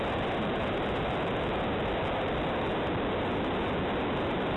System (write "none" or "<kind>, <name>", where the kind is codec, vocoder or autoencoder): none